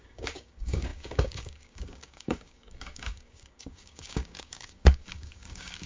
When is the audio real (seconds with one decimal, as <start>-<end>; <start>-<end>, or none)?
none

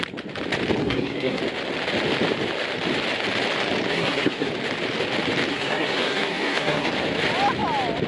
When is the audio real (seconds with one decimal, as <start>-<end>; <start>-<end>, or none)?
0.0-0.8; 1.4-3.9; 4.5-5.5; 6.9-8.1

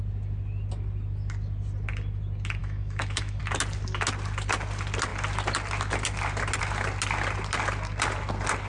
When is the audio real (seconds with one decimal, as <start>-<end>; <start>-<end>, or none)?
0.0-2.6; 3.4-8.7

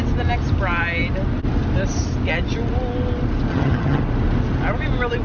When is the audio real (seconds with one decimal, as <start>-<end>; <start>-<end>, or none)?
0.0-3.5; 4.0-5.2